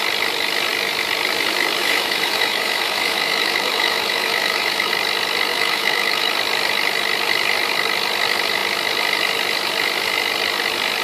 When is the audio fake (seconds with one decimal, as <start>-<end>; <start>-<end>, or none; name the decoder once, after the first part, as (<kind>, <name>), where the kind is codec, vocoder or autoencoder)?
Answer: 1.8-4.9 (autoencoder, DAC-VAE); 5.5-6.3